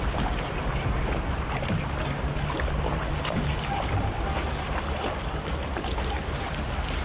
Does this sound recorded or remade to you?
recorded